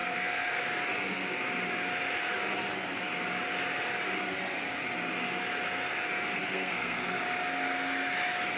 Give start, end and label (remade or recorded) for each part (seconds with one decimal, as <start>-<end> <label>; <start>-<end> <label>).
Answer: 0.0-0.6 remade; 0.6-6.4 recorded; 6.4-7.2 remade; 7.2-8.6 recorded